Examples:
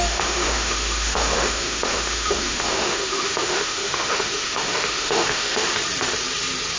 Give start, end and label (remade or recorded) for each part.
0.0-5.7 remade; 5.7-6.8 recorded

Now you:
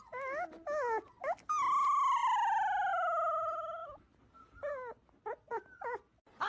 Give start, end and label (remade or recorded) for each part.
0.0-3.8 recorded; 3.8-4.7 remade; 4.7-5.5 recorded; 5.5-6.5 remade

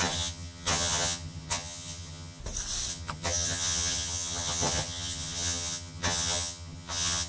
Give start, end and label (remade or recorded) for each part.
0.0-2.4 remade; 2.4-2.9 recorded; 2.9-7.3 remade

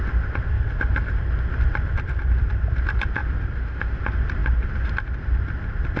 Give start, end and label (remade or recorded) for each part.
0.0-3.2 recorded; 3.2-4.0 remade; 4.0-4.4 recorded; 4.4-4.9 remade; 4.9-6.0 recorded

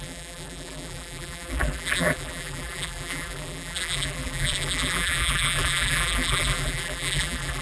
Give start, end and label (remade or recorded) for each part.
0.0-7.6 remade